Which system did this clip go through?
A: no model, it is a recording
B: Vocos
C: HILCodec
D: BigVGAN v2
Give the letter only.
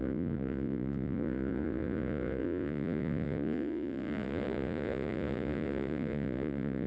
B